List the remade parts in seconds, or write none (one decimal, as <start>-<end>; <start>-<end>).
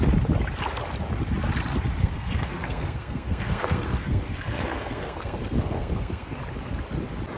2.0-6.4